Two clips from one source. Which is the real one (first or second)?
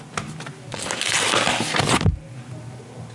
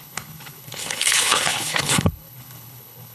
first